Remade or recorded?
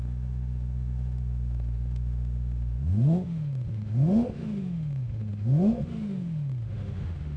remade